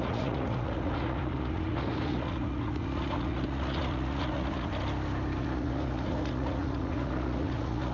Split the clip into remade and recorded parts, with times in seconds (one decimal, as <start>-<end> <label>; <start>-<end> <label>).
0.0-4.7 remade; 4.7-5.4 recorded; 5.4-7.9 remade